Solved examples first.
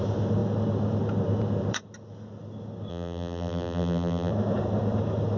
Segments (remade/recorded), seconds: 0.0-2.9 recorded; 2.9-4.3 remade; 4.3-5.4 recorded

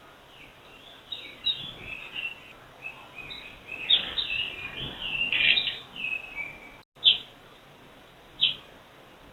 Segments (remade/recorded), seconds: 0.0-0.5 recorded; 0.5-1.6 remade; 1.6-9.3 recorded

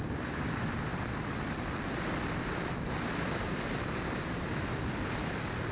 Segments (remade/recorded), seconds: 0.0-5.7 remade

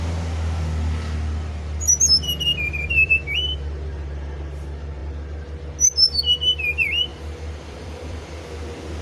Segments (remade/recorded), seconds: 0.0-2.5 recorded; 2.5-3.1 remade; 3.1-7.1 recorded; 7.1-8.4 remade; 8.4-9.0 recorded